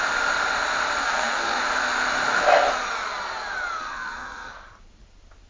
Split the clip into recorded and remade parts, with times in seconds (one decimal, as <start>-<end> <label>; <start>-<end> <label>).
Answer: 0.0-1.0 recorded; 1.0-1.6 remade; 1.6-3.8 recorded; 3.8-4.5 remade; 4.5-5.5 recorded